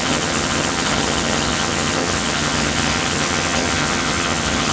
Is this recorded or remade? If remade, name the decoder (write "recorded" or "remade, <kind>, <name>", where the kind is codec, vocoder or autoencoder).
remade, vocoder, HiFi-GAN